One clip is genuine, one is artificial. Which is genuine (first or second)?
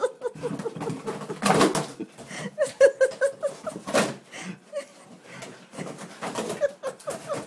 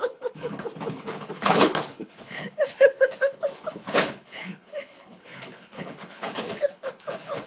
first